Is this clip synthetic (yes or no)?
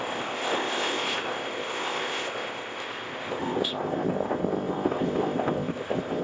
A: yes